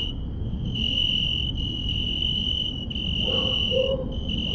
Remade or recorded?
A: remade